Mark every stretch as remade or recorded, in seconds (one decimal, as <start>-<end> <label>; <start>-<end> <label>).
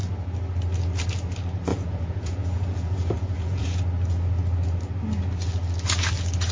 0.0-1.7 recorded; 1.7-3.8 remade; 3.8-6.5 recorded